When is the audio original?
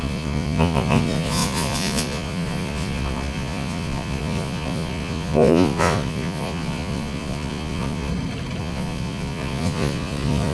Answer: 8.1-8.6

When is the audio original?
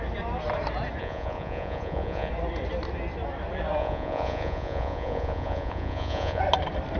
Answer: 0.0-1.0; 2.3-3.8; 6.4-7.0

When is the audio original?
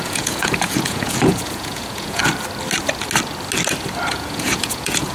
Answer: 2.2-4.1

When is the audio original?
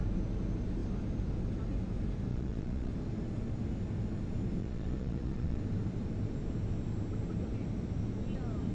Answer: 0.0-2.3; 2.9-4.6; 5.6-8.7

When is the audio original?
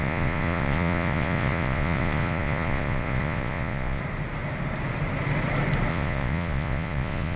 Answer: 4.0-5.9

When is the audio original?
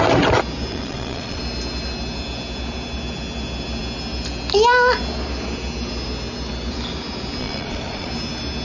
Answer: 0.0-0.7; 1.4-7.4; 8.1-8.6